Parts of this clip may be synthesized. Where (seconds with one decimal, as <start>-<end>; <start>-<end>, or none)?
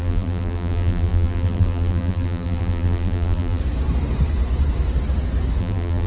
0.0-3.6; 5.6-6.1